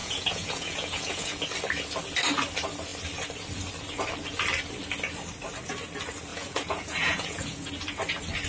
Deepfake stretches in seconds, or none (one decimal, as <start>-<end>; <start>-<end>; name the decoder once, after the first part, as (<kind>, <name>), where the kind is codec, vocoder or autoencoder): 0.0-1.4 (vocoder, Vocos); 6.3-7.7